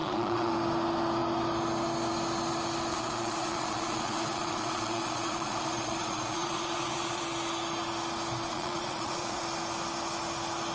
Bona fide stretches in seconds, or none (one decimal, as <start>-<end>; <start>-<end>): 0.5-2.9; 7.2-8.5; 9.4-10.7